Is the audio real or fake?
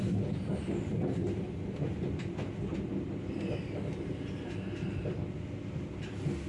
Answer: real